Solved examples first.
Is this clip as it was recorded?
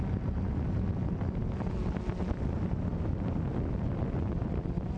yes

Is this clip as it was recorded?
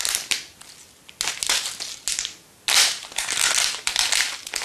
yes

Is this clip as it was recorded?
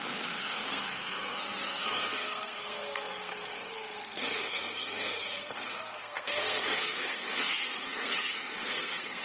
no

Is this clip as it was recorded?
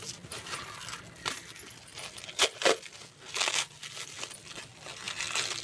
yes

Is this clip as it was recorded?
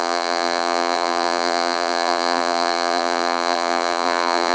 no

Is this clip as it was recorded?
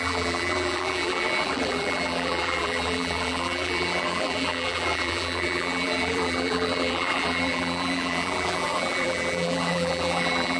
no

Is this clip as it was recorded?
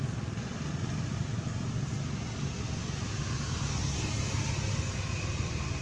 yes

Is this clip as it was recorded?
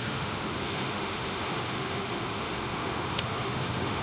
no